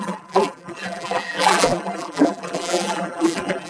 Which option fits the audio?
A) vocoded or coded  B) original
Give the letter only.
A